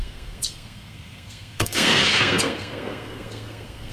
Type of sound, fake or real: fake